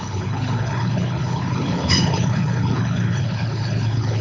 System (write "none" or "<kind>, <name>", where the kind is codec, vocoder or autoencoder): codec, HILCodec